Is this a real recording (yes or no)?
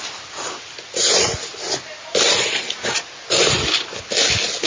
yes